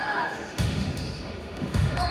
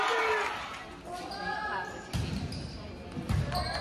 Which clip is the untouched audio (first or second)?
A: second